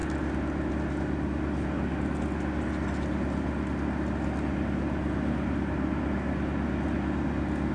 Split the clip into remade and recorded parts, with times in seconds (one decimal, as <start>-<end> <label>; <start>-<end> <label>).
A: 0.0-7.7 recorded